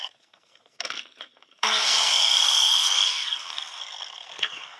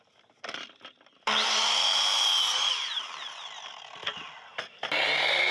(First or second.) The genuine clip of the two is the second